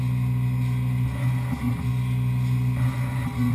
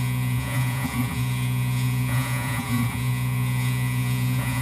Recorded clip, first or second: first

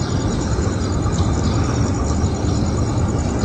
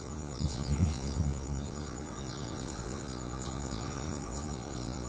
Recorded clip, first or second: first